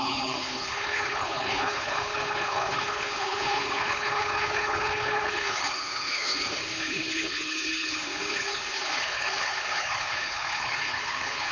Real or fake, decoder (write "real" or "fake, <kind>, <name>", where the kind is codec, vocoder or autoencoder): fake, codec, HILCodec